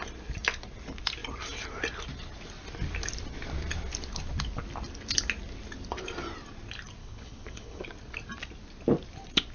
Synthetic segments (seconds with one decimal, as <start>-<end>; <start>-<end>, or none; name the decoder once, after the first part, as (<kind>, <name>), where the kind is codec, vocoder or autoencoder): 7.0-7.8 (codec, HILCodec)